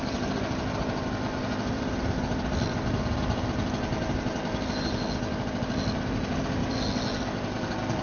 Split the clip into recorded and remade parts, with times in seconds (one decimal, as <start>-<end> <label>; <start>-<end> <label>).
0.0-8.0 recorded